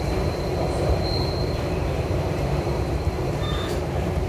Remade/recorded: remade